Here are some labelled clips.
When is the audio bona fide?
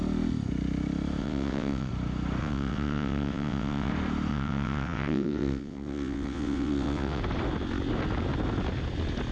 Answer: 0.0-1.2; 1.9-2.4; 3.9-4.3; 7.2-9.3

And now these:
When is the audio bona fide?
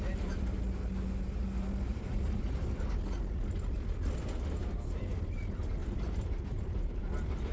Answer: 0.0-1.9; 2.4-5.8; 7.0-7.5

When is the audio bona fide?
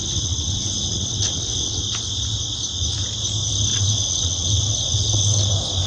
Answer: 1.8-3.7; 5.5-5.9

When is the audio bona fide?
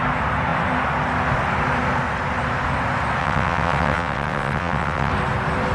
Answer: 0.0-3.2; 5.1-5.7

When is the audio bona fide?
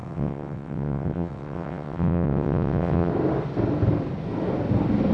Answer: 3.1-5.1